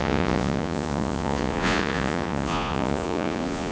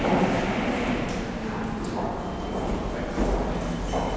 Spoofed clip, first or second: first